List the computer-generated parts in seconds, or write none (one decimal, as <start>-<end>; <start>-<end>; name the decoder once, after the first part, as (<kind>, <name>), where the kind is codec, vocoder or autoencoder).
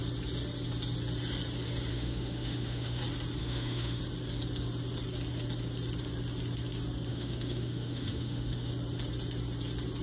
1.9-3.0 (autoencoder, DAC-VAE); 3.4-4.0; 7.1-8.7